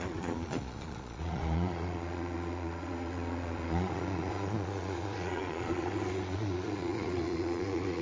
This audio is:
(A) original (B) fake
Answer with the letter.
B